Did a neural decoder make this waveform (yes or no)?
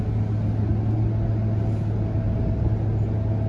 no